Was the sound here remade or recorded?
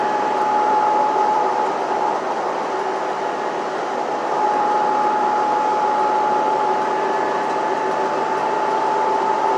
remade